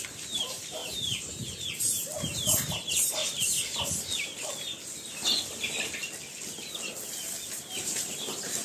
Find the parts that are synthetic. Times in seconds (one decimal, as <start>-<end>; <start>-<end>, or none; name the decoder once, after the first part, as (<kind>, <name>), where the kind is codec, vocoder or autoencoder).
0.0-3.2 (vocoder, BigVGAN v2); 7.5-8.6